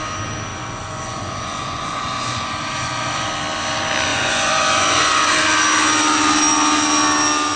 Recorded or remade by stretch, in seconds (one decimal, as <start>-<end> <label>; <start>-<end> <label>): 0.0-0.5 recorded; 0.5-3.3 remade; 3.3-4.1 recorded; 4.1-5.3 remade; 5.3-7.6 recorded

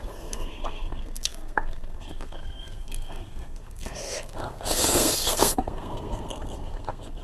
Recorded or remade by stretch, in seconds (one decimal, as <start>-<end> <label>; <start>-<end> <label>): 0.0-7.2 remade

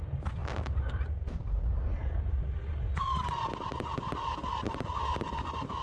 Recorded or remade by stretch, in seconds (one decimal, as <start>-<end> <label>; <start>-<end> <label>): 0.0-0.4 recorded; 0.4-2.6 remade; 2.6-4.4 recorded; 4.4-5.0 remade; 5.0-5.8 recorded

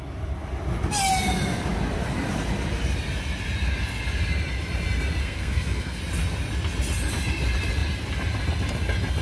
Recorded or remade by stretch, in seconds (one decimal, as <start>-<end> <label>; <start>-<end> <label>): 0.0-5.2 recorded; 5.2-6.0 remade; 6.0-9.2 recorded

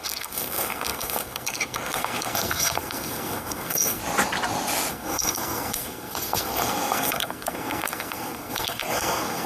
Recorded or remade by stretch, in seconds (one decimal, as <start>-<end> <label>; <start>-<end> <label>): 0.0-4.0 remade; 4.0-4.9 recorded; 4.9-9.5 remade

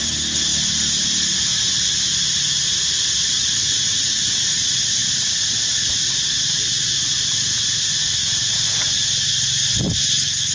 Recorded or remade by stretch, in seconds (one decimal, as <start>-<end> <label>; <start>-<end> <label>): 0.0-10.5 recorded